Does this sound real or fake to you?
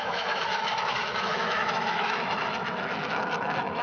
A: fake